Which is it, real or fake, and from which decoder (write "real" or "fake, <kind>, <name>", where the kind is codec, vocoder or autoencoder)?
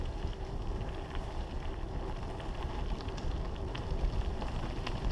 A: real